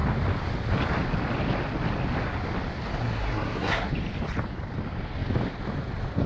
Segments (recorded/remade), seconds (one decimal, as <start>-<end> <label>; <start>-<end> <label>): 0.0-3.0 recorded; 3.0-3.9 remade; 3.9-6.3 recorded